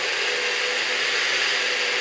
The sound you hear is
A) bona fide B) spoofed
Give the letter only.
A